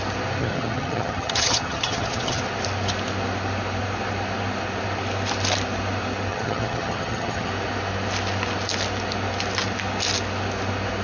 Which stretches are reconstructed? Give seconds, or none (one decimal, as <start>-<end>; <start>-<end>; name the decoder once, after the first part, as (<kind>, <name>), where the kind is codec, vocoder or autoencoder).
0.4-2.4 (vocoder, HiFi-GAN); 6.3-7.5